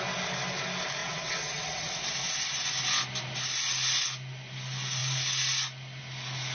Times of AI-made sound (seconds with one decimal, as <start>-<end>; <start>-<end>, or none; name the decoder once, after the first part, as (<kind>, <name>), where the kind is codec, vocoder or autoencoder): 1.0-2.0 (vocoder, WaveNeXt)

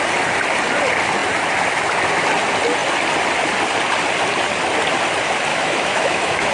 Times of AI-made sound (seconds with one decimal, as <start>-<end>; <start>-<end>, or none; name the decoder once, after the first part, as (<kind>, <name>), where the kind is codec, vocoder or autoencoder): 5.5-6.5 (autoencoder, DAC-VAE)

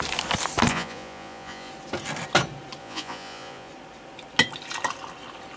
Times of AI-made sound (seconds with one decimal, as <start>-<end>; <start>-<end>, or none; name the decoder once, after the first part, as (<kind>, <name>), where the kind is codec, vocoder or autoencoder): 0.7-1.7 (vocoder, Vocos); 2.8-3.7